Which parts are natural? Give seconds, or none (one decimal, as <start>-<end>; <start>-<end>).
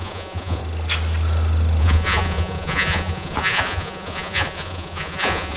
0.6-1.8